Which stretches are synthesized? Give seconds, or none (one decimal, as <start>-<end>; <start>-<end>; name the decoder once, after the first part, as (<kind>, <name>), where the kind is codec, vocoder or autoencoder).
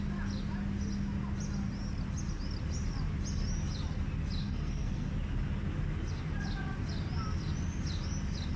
4.4-5.1 (codec, SNAC)